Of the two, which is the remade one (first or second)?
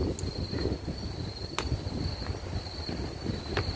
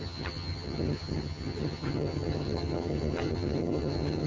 second